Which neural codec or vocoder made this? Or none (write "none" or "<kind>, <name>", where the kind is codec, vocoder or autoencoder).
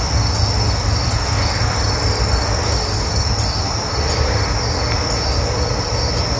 none